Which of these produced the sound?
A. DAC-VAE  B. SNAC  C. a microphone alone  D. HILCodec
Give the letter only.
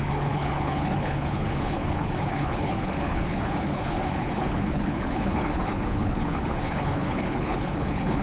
D